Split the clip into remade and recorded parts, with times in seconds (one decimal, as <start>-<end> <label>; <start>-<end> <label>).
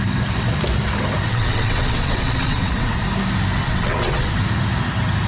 0.0-1.3 recorded; 1.3-3.0 remade; 3.0-3.6 recorded; 3.6-4.3 remade; 4.3-5.3 recorded